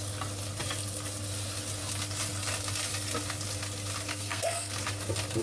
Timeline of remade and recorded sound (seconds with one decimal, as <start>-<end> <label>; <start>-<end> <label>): 0.0-4.1 recorded; 4.1-4.7 remade; 4.7-5.4 recorded